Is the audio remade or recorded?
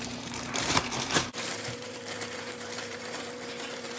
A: remade